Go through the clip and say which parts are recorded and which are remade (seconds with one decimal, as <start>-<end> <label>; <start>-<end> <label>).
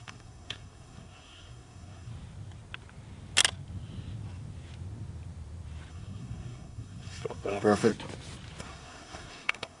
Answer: 0.0-2.1 remade; 2.1-5.9 recorded; 5.9-7.9 remade; 7.9-8.6 recorded; 8.6-9.8 remade